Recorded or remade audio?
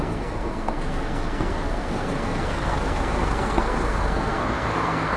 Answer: remade